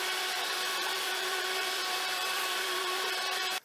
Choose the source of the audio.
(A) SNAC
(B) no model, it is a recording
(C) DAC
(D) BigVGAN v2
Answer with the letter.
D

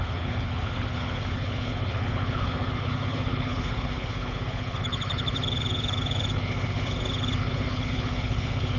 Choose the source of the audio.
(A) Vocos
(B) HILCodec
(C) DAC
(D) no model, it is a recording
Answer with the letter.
B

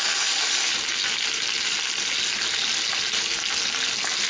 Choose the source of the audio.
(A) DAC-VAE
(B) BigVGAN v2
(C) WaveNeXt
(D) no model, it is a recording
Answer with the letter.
D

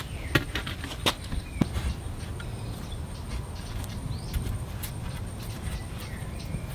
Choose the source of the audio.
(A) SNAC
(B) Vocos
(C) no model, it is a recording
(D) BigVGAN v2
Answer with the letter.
D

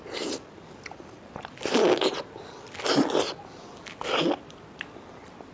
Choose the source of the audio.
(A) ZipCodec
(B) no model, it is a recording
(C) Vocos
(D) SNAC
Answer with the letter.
B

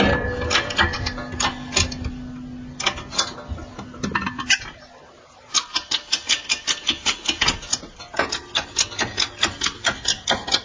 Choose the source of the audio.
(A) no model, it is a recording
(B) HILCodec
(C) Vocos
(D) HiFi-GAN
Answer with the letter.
A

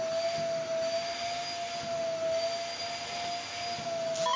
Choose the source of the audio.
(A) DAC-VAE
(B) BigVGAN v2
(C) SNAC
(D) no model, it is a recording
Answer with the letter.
D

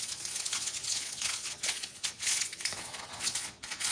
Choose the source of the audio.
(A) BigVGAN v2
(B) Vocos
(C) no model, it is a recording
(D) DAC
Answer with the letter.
B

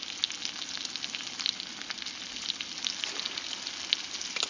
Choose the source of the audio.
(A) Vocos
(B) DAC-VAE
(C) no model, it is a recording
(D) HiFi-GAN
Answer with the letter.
C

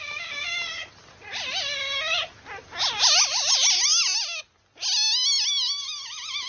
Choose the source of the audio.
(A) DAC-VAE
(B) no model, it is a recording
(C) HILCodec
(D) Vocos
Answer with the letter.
B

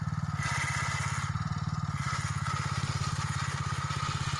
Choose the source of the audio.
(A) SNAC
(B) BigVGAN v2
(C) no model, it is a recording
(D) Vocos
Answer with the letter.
C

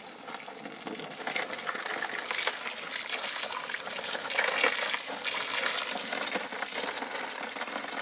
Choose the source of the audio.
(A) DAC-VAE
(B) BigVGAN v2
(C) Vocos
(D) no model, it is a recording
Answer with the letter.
D